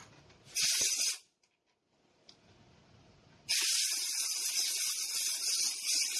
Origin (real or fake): real